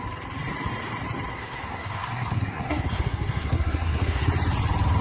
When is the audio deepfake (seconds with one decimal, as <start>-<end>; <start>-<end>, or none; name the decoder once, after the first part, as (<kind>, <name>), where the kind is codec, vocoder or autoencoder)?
1.3-4.3 (codec, SNAC)